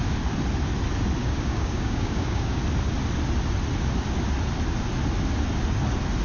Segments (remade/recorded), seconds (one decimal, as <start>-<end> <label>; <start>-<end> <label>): 0.0-1.2 recorded; 1.2-2.6 remade; 2.6-6.2 recorded